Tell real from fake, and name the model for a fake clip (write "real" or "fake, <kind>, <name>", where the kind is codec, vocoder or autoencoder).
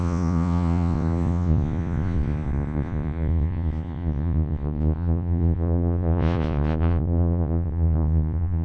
fake, vocoder, Vocos